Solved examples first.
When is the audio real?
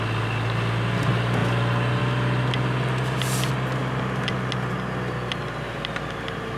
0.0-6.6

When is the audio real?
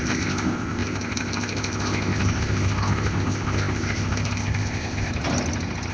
5.1-5.9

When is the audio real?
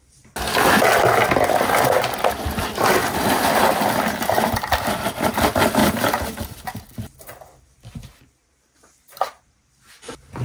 0.0-5.8; 6.6-8.4; 9.7-10.4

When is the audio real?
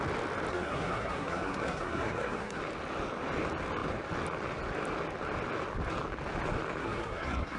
0.0-0.5; 2.6-6.8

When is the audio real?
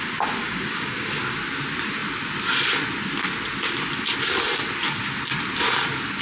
0.0-0.4; 1.1-6.2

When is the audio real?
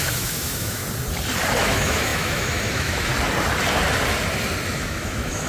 0.8-1.6; 3.1-4.7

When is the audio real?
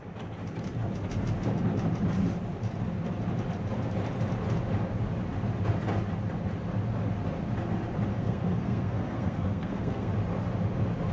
0.0-8.1; 10.1-11.1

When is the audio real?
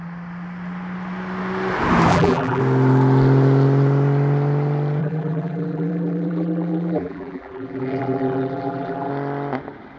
0.0-2.1; 2.6-5.0; 9.1-10.0